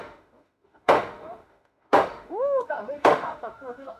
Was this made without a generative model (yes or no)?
no